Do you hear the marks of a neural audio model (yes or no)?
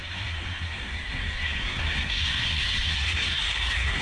yes